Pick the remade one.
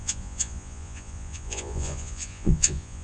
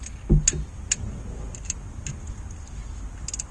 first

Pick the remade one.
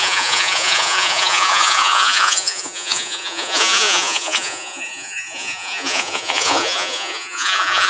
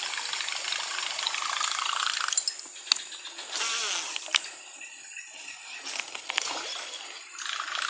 first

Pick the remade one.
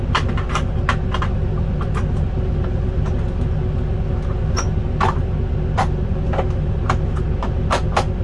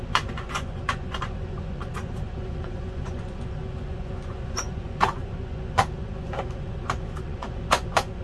second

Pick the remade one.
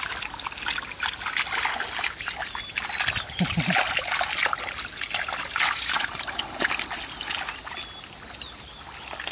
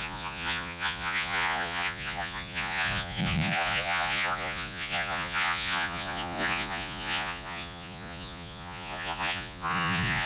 second